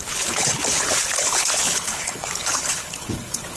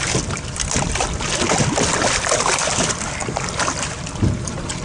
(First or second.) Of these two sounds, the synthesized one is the first